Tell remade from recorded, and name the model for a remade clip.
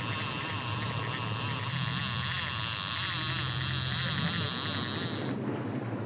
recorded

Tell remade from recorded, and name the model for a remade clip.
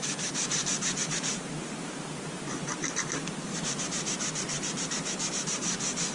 remade, vocoder, BigVGAN v2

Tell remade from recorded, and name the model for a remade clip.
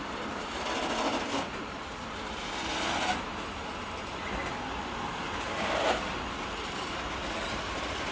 recorded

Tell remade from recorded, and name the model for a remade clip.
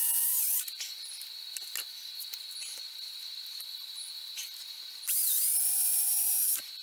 recorded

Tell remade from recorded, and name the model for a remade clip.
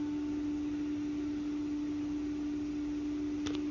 recorded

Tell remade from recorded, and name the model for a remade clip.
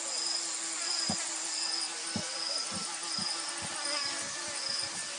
recorded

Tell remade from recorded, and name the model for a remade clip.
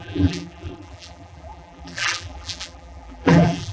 remade, vocoder, BigVGAN v2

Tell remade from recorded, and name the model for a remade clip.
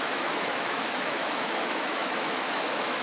remade, autoencoder, DAC-VAE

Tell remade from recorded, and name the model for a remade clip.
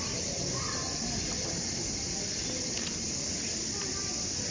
recorded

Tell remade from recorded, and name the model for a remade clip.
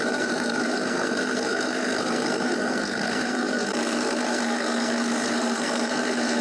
remade, codec, SNAC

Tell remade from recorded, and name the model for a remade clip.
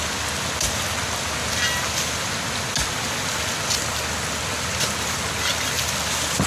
recorded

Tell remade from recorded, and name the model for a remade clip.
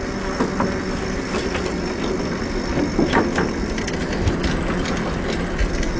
recorded